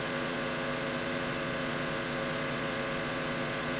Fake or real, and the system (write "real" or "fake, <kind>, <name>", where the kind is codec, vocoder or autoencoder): fake, vocoder, Vocos